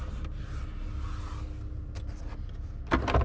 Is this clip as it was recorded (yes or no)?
yes